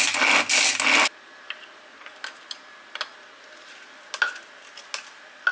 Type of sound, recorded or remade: recorded